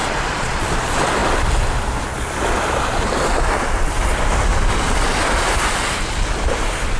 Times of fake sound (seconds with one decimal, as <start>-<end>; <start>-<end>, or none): 0.0-0.6